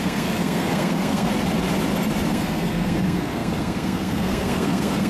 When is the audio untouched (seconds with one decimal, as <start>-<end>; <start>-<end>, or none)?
1.3-2.3